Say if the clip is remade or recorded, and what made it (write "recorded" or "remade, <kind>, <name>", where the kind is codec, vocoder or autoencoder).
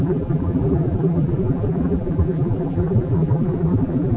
remade, vocoder, BigVGAN v2